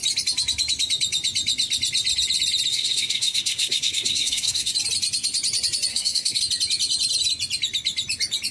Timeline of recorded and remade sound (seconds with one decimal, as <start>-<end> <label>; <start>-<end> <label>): 0.0-2.7 recorded; 2.7-4.7 remade; 4.7-5.9 recorded; 5.9-6.4 remade; 6.4-8.5 recorded